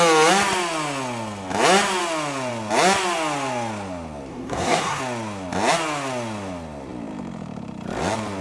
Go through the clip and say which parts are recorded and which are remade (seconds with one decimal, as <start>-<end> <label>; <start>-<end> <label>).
0.0-4.3 recorded; 4.3-5.0 remade; 5.0-8.4 recorded